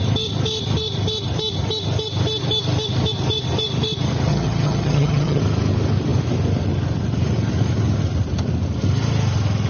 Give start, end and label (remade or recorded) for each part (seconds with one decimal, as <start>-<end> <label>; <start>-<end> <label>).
0.0-4.3 recorded; 4.3-5.4 remade; 5.4-9.7 recorded